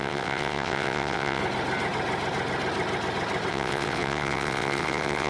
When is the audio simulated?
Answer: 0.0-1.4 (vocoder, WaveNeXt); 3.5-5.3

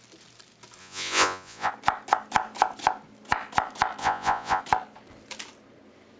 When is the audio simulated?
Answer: 0.8-1.7 (vocoder, Vocos); 4.0-4.6